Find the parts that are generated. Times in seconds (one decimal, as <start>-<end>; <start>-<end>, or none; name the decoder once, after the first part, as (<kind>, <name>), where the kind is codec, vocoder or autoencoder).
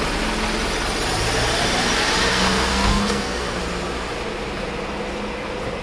2.3-3.6 (codec, SNAC)